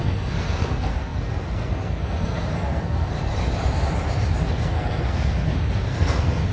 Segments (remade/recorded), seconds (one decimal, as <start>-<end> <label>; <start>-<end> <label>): 0.0-3.3 remade; 3.3-4.5 recorded; 4.5-6.5 remade